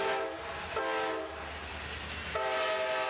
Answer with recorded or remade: recorded